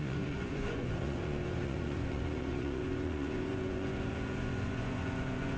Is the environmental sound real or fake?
fake